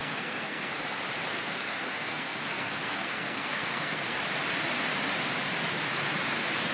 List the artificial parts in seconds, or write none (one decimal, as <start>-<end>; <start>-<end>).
0.0-0.7; 1.3-4.2